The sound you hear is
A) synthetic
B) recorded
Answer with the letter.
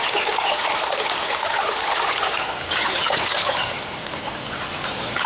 B